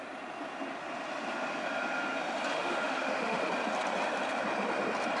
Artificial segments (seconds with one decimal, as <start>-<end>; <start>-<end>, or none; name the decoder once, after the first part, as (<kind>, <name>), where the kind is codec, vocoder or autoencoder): 2.5-3.5 (autoencoder, DAC-VAE)

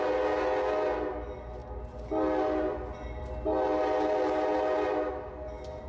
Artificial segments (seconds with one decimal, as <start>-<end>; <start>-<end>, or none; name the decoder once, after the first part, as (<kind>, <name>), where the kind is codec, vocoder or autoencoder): none

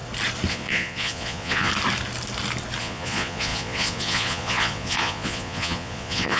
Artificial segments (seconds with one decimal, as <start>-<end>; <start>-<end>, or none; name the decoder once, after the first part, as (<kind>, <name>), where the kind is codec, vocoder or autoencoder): 0.5-1.7 (vocoder, Vocos); 2.8-6.4

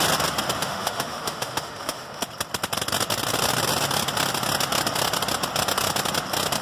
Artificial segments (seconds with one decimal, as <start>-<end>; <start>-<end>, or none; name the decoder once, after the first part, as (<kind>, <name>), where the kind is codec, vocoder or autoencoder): 0.6-2.2 (autoencoder, DAC-VAE)